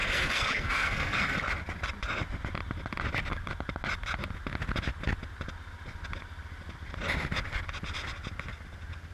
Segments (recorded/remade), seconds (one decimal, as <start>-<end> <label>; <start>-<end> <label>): 0.0-1.4 remade; 1.4-9.1 recorded